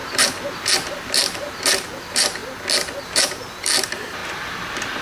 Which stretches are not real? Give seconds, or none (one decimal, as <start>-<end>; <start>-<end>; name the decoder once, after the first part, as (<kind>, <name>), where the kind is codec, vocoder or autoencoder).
0.0-2.4 (vocoder, BigVGAN v2); 3.0-4.2